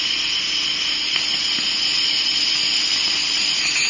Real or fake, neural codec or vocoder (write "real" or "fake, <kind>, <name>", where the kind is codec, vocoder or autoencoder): real